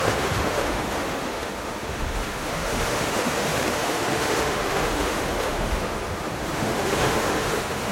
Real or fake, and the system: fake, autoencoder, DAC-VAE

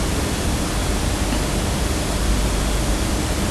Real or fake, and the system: real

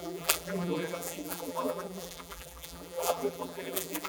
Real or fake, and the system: fake, vocoder, BigVGAN v2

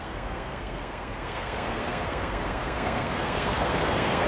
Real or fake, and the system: fake, codec, SNAC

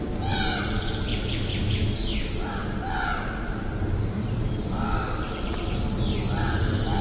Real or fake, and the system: fake, vocoder, BigVGAN v2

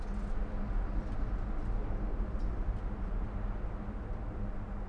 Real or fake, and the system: real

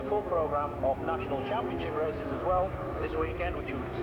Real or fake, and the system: fake, autoencoder, DAC-VAE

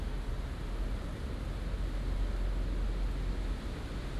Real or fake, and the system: real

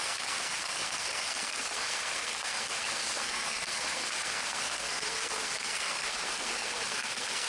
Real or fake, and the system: fake, codec, SNAC